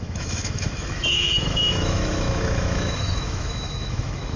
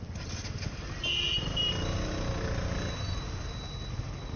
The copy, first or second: first